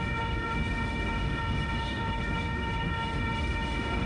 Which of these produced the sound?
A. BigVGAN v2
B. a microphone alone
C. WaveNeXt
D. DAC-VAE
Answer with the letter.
D